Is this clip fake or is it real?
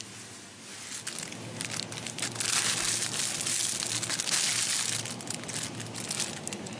real